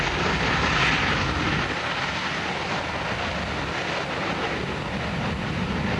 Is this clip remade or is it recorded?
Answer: recorded